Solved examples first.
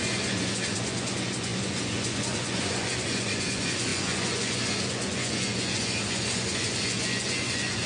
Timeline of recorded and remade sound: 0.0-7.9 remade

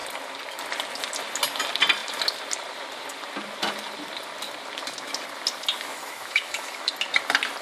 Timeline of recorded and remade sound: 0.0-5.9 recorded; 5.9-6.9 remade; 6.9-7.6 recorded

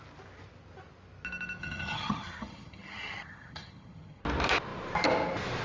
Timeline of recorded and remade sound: 0.0-1.6 recorded; 1.6-4.2 remade; 4.2-5.6 recorded